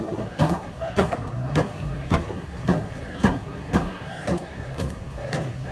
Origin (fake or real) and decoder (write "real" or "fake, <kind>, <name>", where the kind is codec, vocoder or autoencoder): fake, codec, SNAC